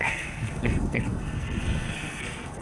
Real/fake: fake